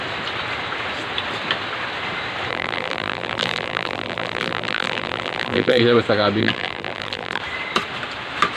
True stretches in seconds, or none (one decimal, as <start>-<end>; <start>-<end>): 0.0-2.5; 5.8-6.4; 7.4-8.6